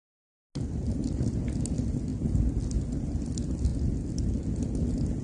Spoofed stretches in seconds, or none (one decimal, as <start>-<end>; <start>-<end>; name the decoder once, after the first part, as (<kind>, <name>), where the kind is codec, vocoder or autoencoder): none